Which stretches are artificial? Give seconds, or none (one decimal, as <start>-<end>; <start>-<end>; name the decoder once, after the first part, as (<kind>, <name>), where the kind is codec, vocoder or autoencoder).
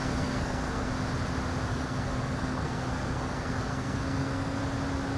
0.0-0.9 (codec, SNAC); 1.7-4.6